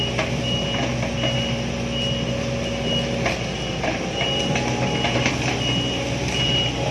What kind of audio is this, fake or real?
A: real